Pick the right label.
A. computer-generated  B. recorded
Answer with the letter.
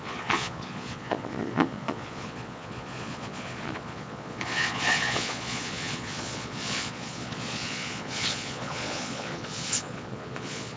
A